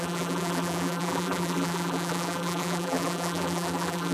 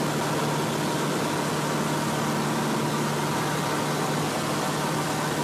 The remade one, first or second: first